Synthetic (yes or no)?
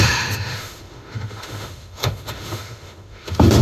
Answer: yes